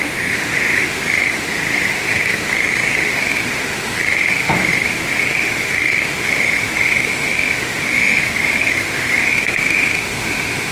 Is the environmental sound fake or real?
fake